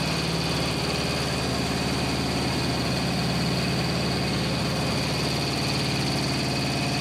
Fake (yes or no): no